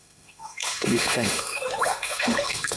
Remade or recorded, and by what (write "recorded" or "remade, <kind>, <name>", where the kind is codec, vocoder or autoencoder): remade, autoencoder, DAC-VAE